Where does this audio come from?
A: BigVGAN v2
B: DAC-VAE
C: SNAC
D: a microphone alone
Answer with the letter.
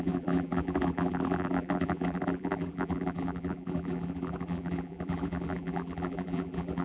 A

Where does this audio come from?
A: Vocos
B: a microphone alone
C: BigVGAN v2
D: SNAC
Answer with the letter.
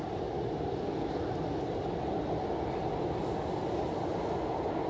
C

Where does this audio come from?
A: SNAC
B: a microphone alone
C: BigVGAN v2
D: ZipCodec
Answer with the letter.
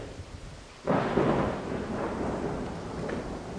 B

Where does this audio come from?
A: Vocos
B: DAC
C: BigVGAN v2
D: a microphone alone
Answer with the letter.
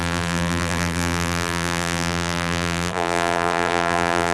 C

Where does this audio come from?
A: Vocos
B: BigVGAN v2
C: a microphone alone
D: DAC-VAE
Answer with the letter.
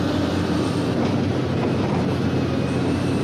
B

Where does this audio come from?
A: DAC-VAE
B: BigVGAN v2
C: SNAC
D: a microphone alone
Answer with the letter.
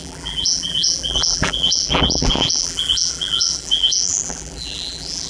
B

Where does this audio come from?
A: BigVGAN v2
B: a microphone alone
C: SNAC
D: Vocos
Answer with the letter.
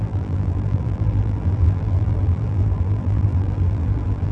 A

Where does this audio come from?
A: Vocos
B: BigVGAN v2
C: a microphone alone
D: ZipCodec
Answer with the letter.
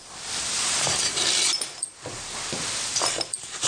B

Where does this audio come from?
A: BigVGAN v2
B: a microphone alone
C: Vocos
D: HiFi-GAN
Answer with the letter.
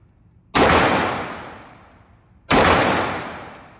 B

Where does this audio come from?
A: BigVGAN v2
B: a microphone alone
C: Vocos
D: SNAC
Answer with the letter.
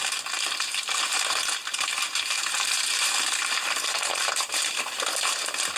A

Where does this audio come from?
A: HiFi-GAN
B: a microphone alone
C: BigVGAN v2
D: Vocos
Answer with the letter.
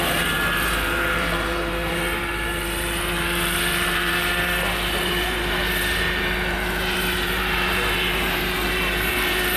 C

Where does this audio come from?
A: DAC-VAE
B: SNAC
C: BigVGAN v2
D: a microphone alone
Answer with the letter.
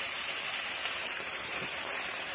C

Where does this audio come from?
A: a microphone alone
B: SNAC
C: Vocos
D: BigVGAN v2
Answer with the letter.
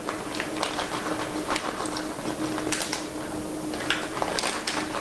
A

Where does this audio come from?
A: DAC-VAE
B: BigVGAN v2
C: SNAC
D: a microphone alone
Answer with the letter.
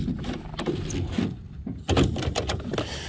D